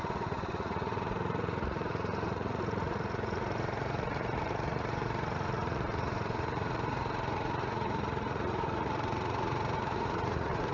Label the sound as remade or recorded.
remade